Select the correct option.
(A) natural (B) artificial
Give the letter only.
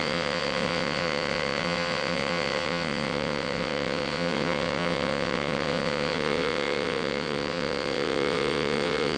B